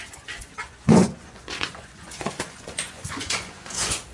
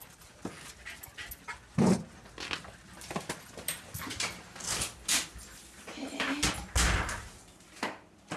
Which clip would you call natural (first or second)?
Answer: second